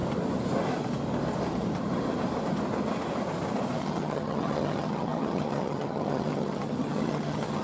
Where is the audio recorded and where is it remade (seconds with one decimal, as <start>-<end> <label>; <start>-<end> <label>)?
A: 0.0-3.8 recorded; 3.8-7.6 remade